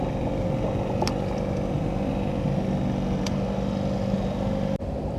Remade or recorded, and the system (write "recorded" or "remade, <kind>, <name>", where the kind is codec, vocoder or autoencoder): recorded